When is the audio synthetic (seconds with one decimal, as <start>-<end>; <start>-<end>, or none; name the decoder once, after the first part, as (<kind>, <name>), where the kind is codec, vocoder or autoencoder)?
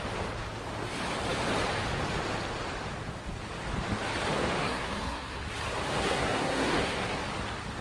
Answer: 4.6-5.4 (codec, SNAC); 6.0-7.2